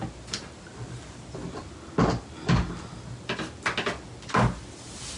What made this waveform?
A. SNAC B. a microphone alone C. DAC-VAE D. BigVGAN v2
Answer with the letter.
B